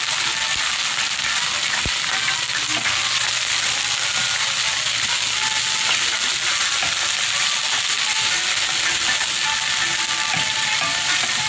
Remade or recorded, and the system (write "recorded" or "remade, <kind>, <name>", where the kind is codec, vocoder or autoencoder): recorded